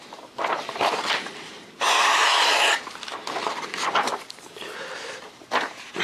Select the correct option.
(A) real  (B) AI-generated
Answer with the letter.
B